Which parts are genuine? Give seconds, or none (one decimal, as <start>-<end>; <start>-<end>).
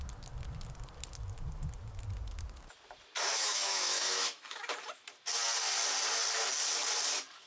0.0-3.3; 4.7-7.5